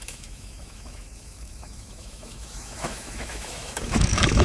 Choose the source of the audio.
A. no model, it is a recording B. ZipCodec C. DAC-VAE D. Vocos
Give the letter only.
C